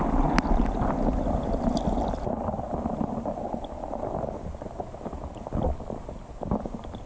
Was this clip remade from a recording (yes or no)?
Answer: no